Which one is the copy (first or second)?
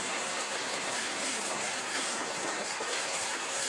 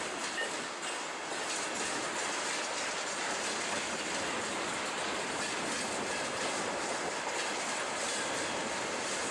first